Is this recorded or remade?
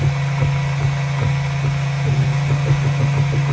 recorded